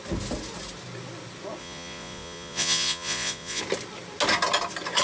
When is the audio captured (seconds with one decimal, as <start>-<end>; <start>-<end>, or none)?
0.0-1.6; 3.6-5.0